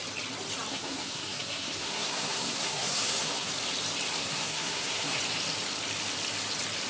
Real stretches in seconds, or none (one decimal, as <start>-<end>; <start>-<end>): 0.0-0.7; 3.5-4.2; 5.2-6.9